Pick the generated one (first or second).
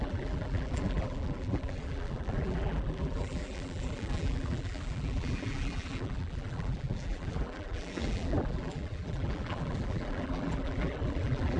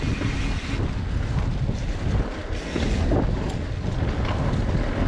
first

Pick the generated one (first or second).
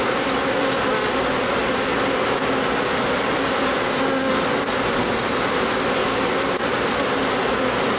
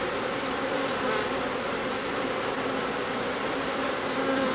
second